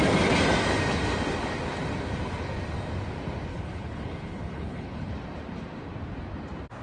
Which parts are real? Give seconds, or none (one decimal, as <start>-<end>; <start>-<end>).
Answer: 0.0-3.5; 5.1-6.8